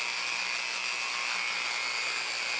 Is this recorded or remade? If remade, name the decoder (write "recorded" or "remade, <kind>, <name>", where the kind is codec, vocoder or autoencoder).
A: recorded